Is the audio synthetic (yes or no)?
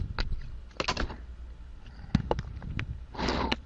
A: no